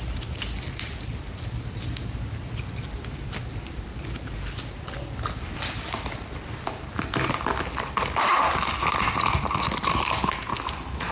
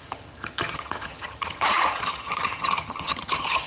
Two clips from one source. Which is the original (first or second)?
first